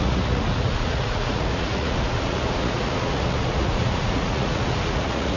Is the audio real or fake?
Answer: fake